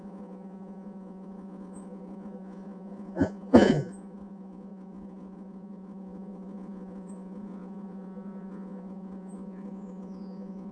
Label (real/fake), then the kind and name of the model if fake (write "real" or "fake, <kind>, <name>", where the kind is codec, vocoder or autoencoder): fake, vocoder, Vocos